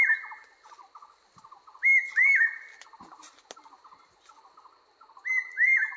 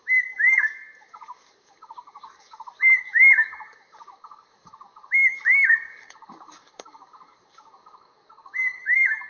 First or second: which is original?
first